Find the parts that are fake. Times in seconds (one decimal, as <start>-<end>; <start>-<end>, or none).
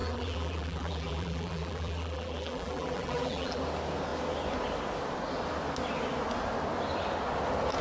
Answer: 0.0-3.6